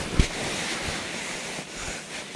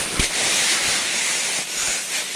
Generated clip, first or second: second